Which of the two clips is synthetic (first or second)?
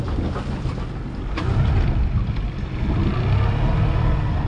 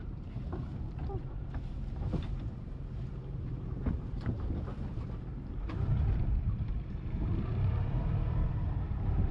second